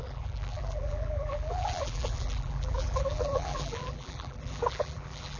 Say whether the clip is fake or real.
fake